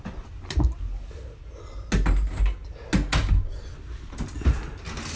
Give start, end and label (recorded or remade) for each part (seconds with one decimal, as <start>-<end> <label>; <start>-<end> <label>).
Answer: 0.0-5.2 recorded